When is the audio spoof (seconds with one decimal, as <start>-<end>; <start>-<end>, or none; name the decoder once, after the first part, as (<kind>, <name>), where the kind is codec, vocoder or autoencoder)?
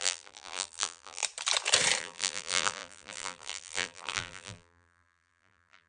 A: 0.0-1.2 (vocoder, BigVGAN v2); 2.0-5.9